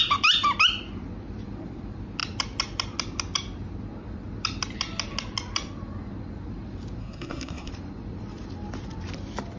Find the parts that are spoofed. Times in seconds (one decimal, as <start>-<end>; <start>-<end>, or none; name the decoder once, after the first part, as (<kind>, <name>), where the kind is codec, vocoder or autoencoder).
7.0-7.7 (codec, SNAC)

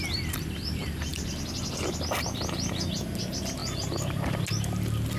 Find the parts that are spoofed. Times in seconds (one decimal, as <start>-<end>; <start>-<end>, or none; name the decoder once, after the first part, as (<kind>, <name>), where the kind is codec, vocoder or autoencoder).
none